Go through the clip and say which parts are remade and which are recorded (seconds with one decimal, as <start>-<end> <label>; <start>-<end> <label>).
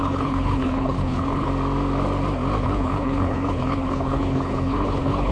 0.0-1.5 remade; 1.5-2.6 recorded; 2.6-5.3 remade